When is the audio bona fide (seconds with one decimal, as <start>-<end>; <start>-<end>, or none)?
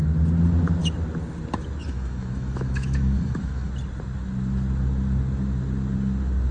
0.0-1.8; 3.7-6.5